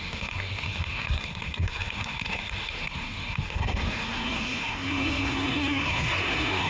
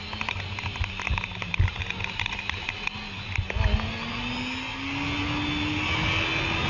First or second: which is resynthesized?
first